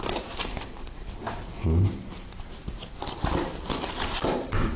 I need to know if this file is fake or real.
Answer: fake